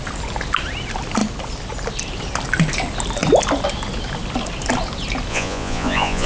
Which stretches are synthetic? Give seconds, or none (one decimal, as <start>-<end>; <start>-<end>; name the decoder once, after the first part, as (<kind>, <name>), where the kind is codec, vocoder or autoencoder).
5.3-6.3 (vocoder, Vocos)